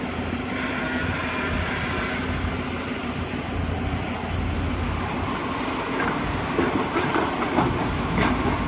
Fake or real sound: real